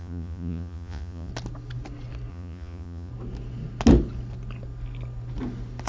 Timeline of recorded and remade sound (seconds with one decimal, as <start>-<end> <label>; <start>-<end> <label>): 0.0-1.3 remade; 1.3-2.3 recorded; 2.3-3.1 remade; 3.1-5.9 recorded